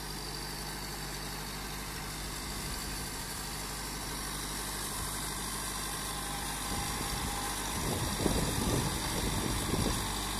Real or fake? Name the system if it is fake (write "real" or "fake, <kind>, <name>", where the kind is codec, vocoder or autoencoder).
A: real